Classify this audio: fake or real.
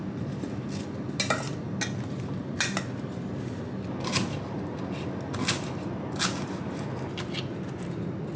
real